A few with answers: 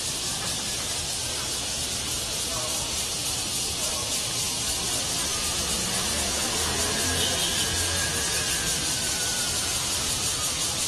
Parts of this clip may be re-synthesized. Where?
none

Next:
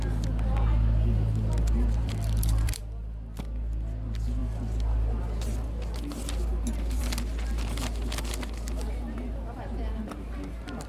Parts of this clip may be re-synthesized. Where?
2.0-2.8 (vocoder, BigVGAN v2)

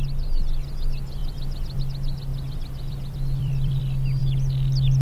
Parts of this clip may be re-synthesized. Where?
1.2-1.8 (vocoder, BigVGAN v2); 2.3-3.8

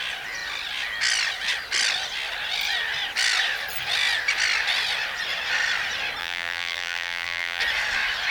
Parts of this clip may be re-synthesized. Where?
6.2-7.6 (vocoder, BigVGAN v2)

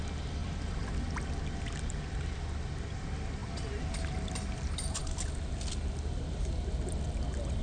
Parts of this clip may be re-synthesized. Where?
0.4-1.1 (vocoder, BigVGAN v2); 3.4-5.0

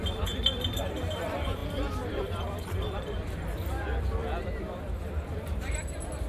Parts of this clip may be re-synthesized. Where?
0.0-6.3 (vocoder, BigVGAN v2)